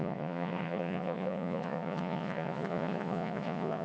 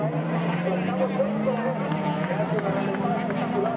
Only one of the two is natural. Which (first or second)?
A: second